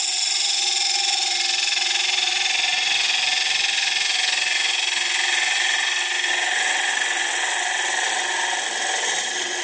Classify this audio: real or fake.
real